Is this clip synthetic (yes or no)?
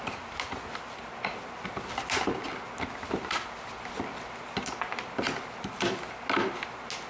no